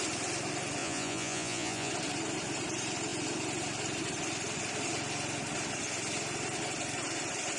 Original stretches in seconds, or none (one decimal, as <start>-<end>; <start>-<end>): 0.0-0.8; 1.9-7.6